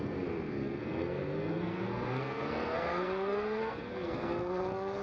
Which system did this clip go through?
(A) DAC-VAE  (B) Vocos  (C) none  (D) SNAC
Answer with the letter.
D